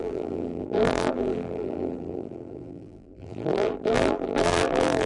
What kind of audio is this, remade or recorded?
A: remade